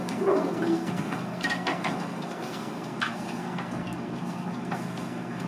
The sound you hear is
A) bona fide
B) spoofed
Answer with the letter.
B